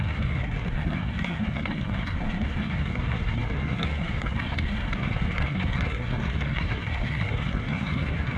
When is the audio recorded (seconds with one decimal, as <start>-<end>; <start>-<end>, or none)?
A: none